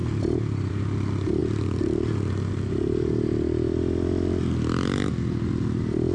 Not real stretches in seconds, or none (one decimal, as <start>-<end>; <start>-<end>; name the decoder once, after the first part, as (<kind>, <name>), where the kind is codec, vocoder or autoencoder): none